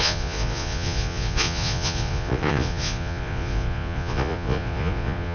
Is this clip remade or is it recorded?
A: remade